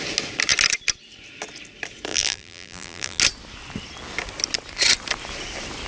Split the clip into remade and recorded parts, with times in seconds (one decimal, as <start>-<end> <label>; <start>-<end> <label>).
0.0-2.1 recorded; 2.1-3.2 remade; 3.2-5.9 recorded